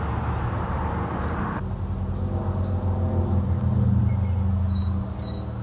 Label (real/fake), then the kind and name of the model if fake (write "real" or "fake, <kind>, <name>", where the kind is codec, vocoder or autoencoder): real